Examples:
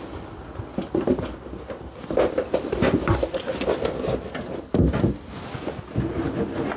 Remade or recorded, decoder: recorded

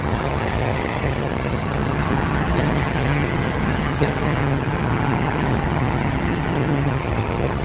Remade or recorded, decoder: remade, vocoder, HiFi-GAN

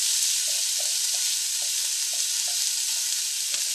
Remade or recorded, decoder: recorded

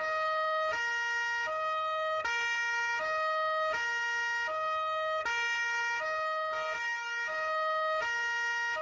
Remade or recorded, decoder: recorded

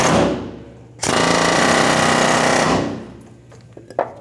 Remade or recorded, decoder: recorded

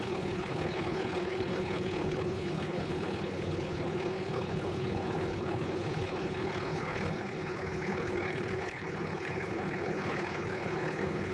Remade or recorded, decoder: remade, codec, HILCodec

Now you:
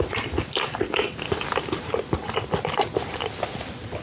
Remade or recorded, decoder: recorded